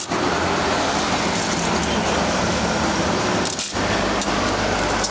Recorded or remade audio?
recorded